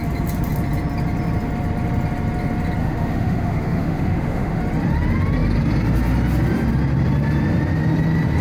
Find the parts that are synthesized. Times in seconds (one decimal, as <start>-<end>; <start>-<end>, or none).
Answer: 2.8-4.6